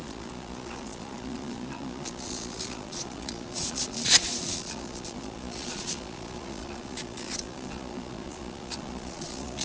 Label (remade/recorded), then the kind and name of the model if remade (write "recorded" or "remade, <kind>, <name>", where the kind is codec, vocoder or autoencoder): remade, vocoder, Vocos